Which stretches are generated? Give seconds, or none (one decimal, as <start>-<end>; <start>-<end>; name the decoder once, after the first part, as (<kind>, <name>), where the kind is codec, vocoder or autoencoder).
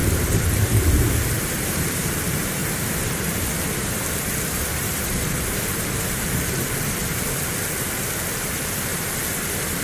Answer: 1.4-2.6 (vocoder, BigVGAN v2); 4.8-7.0; 8.5-8.9